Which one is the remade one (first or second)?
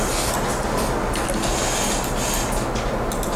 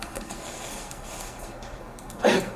second